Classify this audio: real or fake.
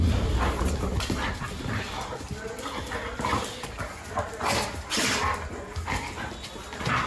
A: real